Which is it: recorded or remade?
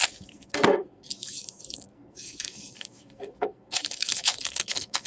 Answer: remade